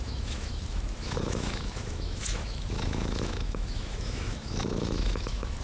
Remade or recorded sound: remade